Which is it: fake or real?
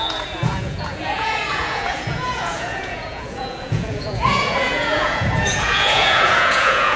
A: fake